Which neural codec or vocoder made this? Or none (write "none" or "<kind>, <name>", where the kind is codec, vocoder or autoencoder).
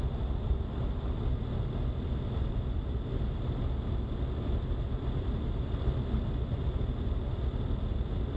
none